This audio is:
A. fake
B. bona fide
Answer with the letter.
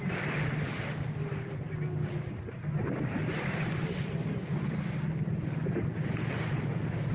B